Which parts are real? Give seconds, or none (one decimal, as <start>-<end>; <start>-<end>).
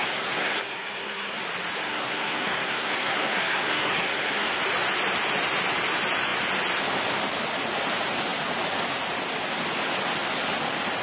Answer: 1.4-1.8; 4.6-11.0